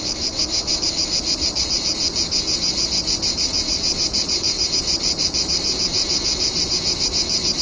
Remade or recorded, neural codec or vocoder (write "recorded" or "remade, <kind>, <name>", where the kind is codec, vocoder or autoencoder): remade, vocoder, BigVGAN v2